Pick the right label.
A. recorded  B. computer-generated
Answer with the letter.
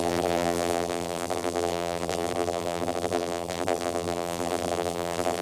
B